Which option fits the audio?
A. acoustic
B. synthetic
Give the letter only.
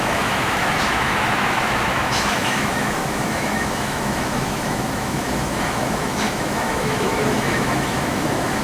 B